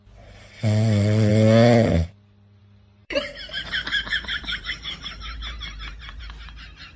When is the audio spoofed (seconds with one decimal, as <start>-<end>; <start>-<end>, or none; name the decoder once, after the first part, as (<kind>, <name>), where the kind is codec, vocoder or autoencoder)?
3.0-6.2 (vocoder, BigVGAN v2)